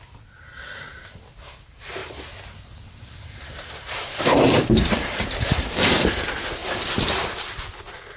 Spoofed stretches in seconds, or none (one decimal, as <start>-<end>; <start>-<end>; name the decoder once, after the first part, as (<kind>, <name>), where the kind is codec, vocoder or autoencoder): 2.0-6.1 (vocoder, BigVGAN v2)